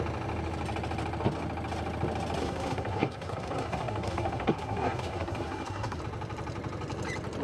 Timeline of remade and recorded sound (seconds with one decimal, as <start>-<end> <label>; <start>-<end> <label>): 0.0-2.4 recorded; 2.4-6.0 remade; 6.0-7.4 recorded